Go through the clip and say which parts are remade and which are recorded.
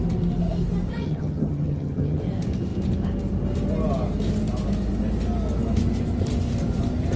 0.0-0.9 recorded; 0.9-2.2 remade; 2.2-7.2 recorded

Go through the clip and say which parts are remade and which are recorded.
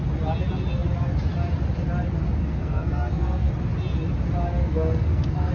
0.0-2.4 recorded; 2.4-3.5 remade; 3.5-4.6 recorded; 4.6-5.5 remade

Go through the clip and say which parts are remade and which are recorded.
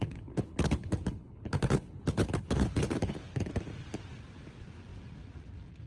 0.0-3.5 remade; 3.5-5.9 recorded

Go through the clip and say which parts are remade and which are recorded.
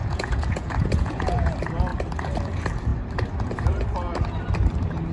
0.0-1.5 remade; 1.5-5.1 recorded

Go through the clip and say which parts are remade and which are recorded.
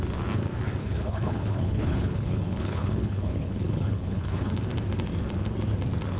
0.0-0.8 recorded; 0.8-4.5 remade; 4.5-6.2 recorded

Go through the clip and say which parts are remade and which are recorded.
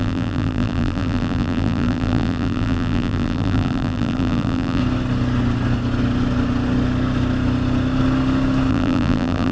0.0-4.8 remade; 4.8-8.7 recorded; 8.7-9.5 remade